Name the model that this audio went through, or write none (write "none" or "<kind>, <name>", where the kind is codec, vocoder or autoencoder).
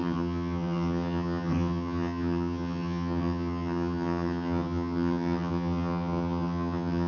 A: vocoder, HiFi-GAN